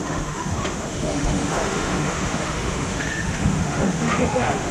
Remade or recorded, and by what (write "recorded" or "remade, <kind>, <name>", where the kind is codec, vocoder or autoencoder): remade, autoencoder, DAC-VAE